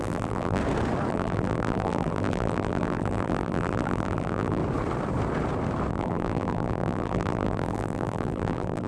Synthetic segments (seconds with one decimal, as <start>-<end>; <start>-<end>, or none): 0.0-0.6; 1.1-4.6; 5.9-8.9